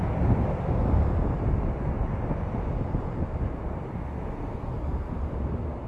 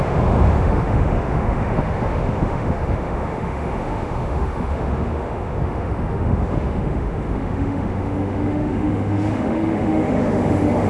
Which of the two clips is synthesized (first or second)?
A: second